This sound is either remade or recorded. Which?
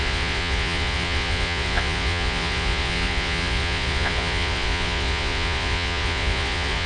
remade